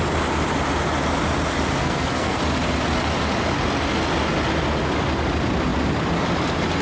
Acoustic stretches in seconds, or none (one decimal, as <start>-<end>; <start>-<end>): 0.0-1.8; 2.4-6.8

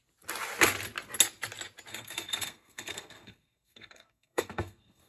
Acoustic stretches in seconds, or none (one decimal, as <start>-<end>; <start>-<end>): 0.0-1.9

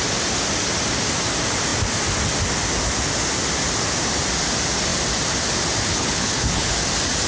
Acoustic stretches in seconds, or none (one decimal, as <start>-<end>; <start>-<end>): 0.0-5.9; 6.7-7.3

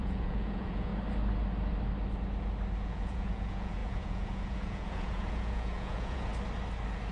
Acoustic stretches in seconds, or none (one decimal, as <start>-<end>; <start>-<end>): 0.9-2.8; 6.3-7.1

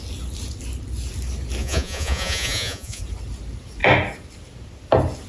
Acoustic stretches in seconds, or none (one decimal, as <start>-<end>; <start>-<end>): 0.0-1.6; 3.0-5.3

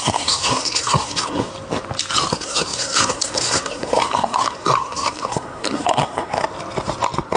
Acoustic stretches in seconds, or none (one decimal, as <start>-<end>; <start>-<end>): 1.5-2.3; 6.4-7.4